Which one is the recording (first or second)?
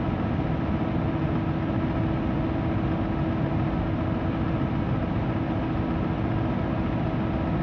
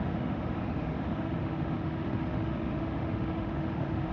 first